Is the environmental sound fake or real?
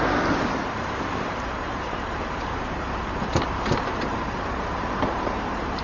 fake